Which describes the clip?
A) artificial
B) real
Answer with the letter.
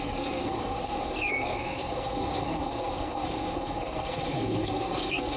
A